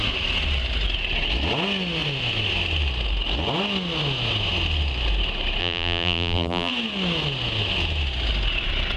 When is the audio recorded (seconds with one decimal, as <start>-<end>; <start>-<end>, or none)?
0.0-5.6; 6.7-9.0